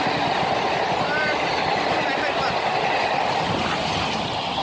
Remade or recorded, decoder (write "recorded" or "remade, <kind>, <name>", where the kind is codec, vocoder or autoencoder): recorded